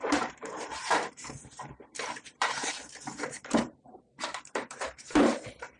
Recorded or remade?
remade